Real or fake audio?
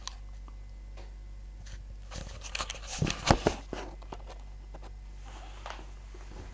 real